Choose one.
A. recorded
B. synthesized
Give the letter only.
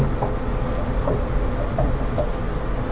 A